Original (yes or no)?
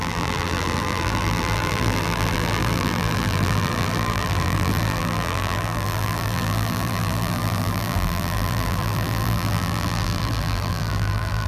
no